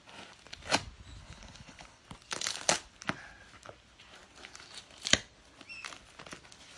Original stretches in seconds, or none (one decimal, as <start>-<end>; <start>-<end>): 0.0-1.2; 2.0-6.8